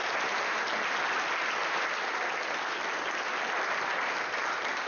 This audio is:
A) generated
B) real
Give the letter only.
B